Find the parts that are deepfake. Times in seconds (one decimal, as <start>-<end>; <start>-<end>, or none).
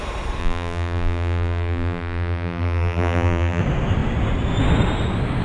0.4-3.6